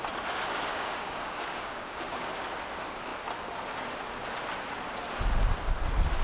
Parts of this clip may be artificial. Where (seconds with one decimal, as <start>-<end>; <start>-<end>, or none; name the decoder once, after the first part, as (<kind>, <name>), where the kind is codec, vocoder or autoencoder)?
0.7-2.3 (codec, DAC)